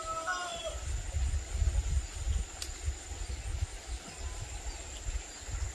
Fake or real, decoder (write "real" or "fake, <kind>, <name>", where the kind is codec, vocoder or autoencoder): real